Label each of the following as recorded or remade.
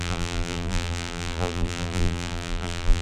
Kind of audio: remade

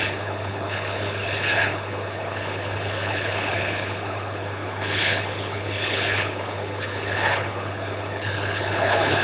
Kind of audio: remade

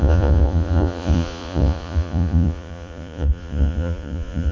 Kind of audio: remade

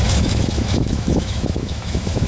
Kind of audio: remade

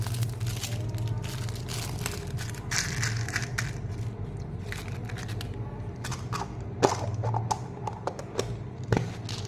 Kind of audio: recorded